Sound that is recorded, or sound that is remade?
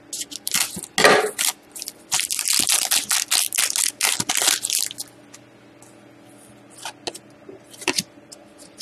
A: recorded